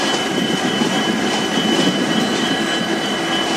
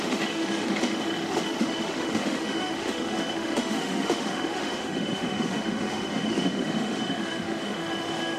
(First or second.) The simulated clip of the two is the second